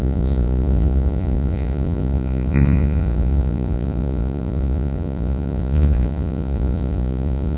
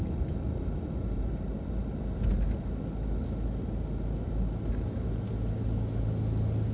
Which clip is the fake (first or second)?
first